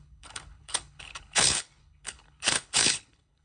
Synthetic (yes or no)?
yes